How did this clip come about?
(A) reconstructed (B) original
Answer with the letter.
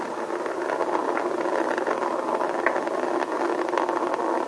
B